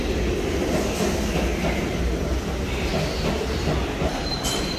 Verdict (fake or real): real